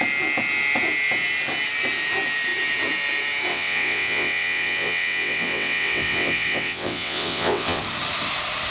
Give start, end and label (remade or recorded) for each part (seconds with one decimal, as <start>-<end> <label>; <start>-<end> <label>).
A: 0.0-3.5 recorded; 3.5-7.8 remade; 7.8-8.7 recorded